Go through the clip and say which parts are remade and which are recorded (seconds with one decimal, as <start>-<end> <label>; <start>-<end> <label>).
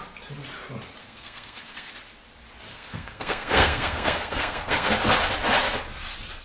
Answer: 0.0-1.0 recorded; 1.0-1.9 remade; 1.9-2.7 recorded; 2.7-4.9 remade; 4.9-6.4 recorded